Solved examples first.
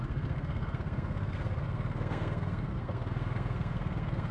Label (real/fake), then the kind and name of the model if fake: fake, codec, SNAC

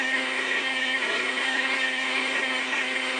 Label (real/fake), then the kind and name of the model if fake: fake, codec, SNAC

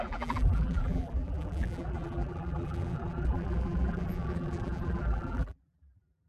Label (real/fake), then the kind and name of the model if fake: fake, vocoder, BigVGAN v2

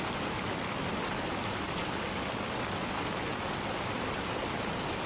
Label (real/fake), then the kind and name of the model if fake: real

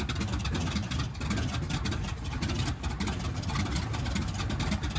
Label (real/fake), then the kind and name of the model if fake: real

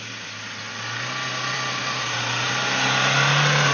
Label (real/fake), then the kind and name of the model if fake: real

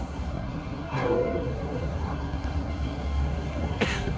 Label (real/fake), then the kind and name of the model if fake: fake, codec, SNAC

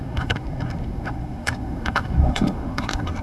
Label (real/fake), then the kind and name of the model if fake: fake, codec, SNAC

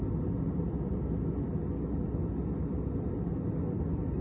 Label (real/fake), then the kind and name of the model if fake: real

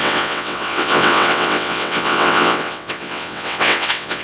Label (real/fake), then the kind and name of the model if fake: fake, vocoder, WaveNeXt